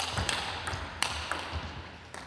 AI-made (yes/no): no